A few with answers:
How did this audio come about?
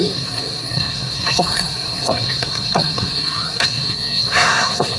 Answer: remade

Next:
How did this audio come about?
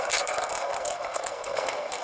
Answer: remade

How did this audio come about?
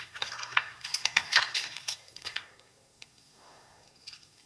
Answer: remade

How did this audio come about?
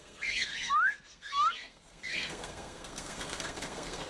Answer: remade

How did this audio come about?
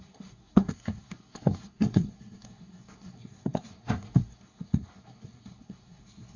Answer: remade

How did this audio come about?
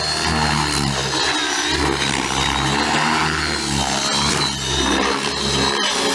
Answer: recorded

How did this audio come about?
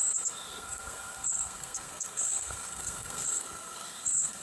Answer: remade